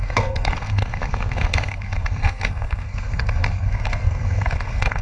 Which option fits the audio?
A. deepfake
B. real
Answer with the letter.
A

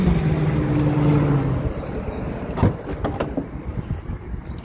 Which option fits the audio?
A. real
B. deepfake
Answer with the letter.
A